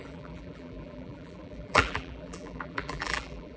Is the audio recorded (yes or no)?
no